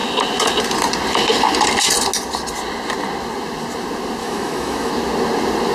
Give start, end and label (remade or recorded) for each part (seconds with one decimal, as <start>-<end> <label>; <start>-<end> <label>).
0.0-4.2 recorded; 4.2-4.9 remade; 4.9-5.7 recorded